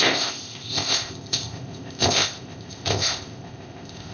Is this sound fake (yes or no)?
yes